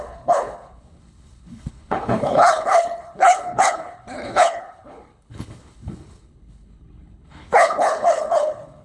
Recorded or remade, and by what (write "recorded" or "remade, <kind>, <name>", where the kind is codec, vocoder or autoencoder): remade, codec, HILCodec